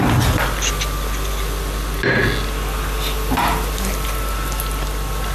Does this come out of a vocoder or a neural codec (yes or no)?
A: no